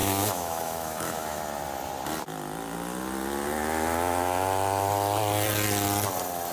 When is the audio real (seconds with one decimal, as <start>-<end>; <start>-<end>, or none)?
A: 1.4-6.5